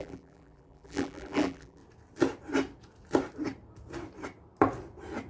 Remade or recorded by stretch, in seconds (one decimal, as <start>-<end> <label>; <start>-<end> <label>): 0.0-1.8 remade; 1.8-5.3 recorded